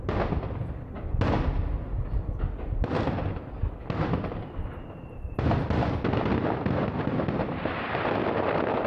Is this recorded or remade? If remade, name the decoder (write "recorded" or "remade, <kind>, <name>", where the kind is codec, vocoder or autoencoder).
recorded